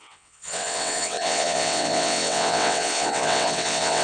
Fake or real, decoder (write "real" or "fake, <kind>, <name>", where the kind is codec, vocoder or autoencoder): fake, vocoder, WaveNeXt